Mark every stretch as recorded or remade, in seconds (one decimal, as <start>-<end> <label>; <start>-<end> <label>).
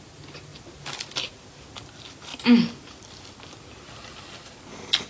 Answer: 0.0-5.1 recorded